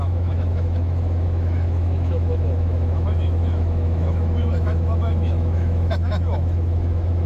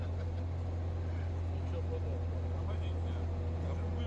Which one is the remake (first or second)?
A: first